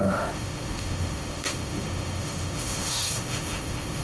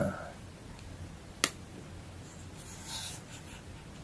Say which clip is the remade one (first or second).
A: first